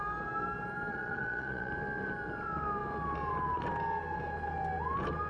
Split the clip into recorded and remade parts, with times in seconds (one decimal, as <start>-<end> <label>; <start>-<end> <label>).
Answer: 0.0-0.9 recorded; 0.9-1.7 remade; 1.7-5.3 recorded

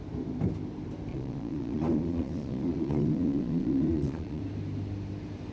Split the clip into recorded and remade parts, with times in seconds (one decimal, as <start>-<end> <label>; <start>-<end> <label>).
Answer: 0.0-1.1 recorded; 1.1-4.4 remade; 4.4-5.5 recorded

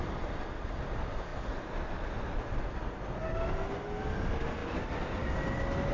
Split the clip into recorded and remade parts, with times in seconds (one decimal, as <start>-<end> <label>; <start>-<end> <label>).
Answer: 0.0-5.9 recorded

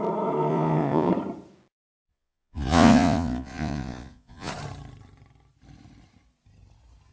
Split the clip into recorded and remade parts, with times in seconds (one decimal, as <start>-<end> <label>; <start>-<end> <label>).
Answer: 0.0-0.5 recorded; 0.5-1.1 remade; 1.1-2.1 recorded; 2.1-4.5 remade; 4.5-7.1 recorded

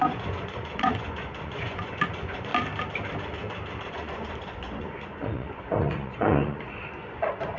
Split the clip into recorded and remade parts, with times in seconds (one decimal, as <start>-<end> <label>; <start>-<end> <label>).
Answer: 0.0-2.5 remade; 2.5-3.9 recorded; 3.9-7.6 remade